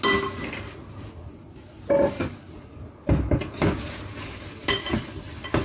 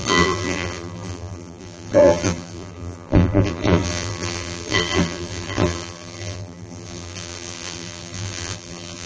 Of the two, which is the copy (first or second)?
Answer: second